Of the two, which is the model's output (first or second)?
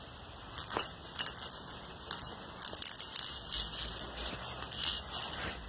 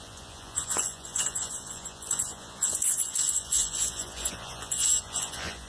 second